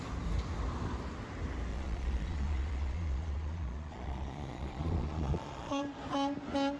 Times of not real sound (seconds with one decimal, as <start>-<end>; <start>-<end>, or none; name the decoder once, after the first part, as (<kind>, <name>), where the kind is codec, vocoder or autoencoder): 1.7-5.8 (vocoder, Vocos)